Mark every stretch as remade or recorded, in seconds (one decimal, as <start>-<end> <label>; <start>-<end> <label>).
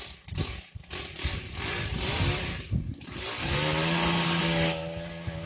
0.0-5.5 recorded